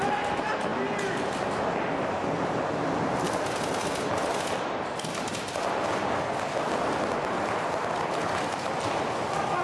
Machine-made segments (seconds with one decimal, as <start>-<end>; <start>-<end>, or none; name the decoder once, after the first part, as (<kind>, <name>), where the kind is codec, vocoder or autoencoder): none